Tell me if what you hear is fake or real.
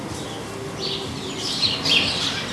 real